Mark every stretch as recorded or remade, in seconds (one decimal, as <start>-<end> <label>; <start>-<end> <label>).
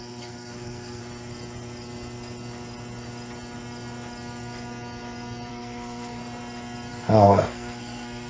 0.0-1.0 remade; 1.0-5.5 recorded; 5.5-6.2 remade; 6.2-6.9 recorded; 6.9-8.3 remade